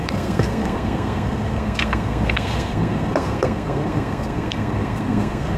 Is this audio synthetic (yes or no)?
yes